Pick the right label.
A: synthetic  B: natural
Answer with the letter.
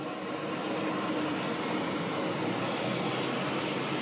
B